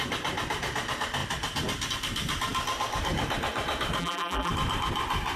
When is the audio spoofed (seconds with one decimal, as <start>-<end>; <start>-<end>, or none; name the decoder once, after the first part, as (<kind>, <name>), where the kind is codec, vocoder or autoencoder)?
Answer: 4.0-4.5 (vocoder, BigVGAN v2)